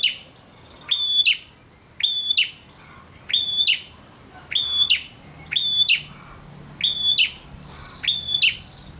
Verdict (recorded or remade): recorded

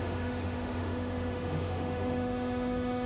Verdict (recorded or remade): remade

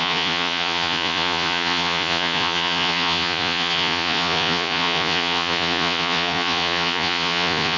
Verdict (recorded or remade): remade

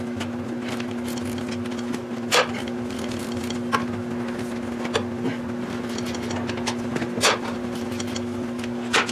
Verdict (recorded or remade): recorded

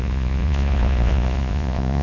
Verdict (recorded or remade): remade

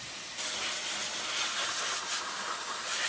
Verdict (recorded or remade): recorded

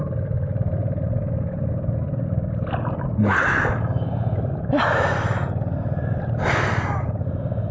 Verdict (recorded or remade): recorded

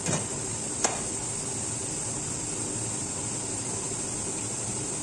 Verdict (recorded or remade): recorded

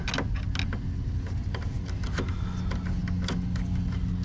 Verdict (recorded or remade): recorded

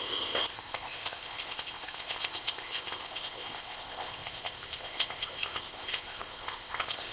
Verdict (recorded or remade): remade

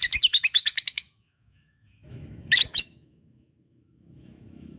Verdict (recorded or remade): remade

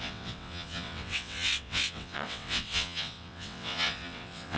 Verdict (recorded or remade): remade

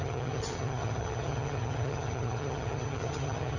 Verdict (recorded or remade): remade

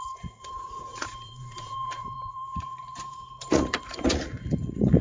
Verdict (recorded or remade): remade